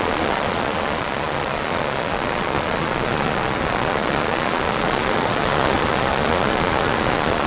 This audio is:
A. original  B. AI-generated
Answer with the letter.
B